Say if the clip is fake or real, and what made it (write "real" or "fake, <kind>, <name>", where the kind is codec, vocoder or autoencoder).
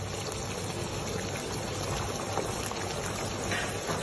real